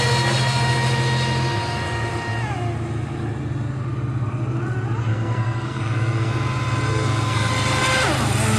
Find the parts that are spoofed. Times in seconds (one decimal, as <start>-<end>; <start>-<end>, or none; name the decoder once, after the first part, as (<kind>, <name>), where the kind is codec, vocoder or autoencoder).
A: 5.1-6.3 (codec, SNAC); 6.9-7.5